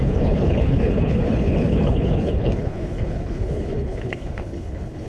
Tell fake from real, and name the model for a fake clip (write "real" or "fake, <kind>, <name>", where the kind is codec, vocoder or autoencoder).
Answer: fake, codec, HILCodec